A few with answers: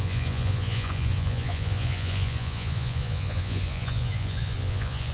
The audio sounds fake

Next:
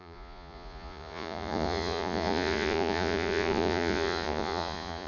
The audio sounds fake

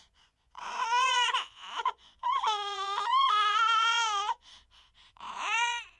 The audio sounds fake